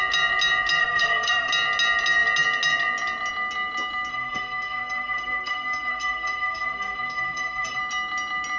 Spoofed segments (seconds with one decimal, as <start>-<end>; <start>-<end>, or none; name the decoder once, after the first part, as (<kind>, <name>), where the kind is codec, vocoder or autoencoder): 0.8-1.5 (codec, SNAC); 4.1-7.8